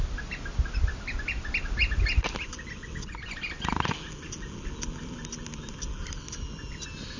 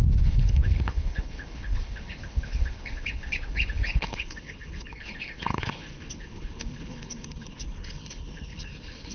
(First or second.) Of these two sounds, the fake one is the second